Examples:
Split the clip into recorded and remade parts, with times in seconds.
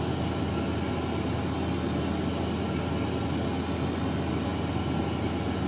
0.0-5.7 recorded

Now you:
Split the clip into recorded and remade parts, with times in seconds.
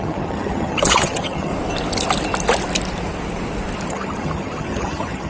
0.0-1.5 remade; 1.5-3.9 recorded; 3.9-5.3 remade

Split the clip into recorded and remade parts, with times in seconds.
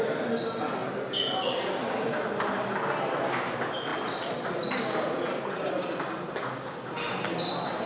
0.0-7.9 recorded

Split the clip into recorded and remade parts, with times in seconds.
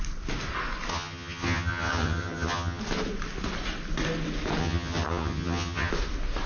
0.0-0.9 recorded; 0.9-2.8 remade; 2.8-4.6 recorded; 4.6-5.9 remade; 5.9-6.5 recorded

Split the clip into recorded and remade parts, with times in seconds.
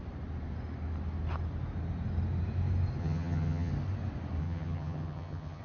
0.0-3.0 recorded; 3.0-3.7 remade; 3.7-4.4 recorded; 4.4-5.6 remade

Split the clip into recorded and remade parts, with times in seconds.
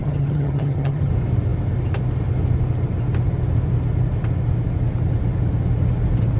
0.0-1.1 remade; 1.1-6.4 recorded